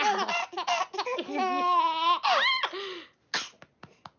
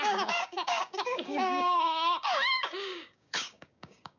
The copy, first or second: second